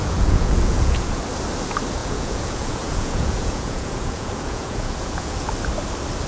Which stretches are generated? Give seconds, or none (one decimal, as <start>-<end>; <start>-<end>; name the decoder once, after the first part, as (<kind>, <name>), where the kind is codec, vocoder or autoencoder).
0.0-1.2 (vocoder, Vocos); 2.0-5.5